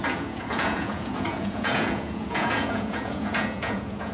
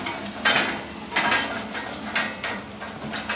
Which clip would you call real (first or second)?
second